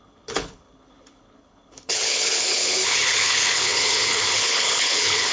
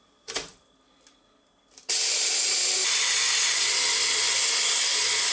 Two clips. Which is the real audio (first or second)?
second